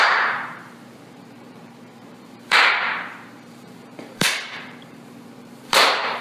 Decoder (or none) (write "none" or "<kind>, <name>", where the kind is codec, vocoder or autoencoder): vocoder, BigVGAN v2